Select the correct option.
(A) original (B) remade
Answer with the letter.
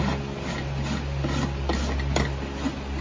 A